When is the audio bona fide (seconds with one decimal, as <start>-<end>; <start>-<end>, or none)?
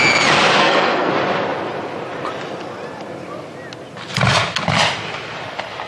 0.0-0.6; 1.1-5.9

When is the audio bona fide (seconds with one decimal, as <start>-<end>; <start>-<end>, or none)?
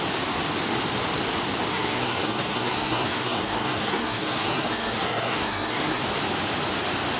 0.0-1.7; 6.0-7.2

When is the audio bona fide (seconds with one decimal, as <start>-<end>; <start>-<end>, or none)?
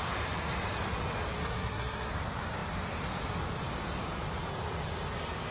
0.0-1.4; 2.1-5.5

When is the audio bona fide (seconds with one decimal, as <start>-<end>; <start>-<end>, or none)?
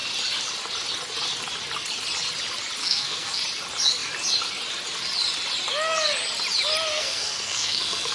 0.0-2.8; 3.4-6.9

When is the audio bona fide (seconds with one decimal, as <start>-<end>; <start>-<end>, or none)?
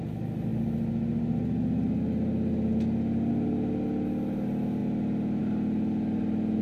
0.0-6.6